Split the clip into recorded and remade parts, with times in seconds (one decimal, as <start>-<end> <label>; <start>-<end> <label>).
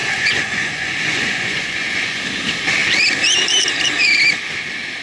0.0-2.2 remade; 2.2-5.0 recorded